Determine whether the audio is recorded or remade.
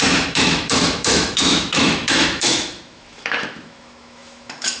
remade